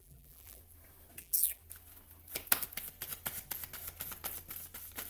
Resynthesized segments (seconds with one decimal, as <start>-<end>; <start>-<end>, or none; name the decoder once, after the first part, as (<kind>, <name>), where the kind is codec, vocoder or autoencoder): 0.0-0.6 (vocoder, BigVGAN v2); 1.2-1.6